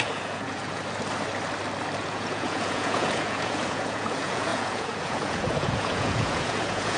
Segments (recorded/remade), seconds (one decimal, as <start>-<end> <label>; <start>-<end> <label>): 0.0-0.8 remade; 0.8-2.0 recorded; 2.0-7.0 remade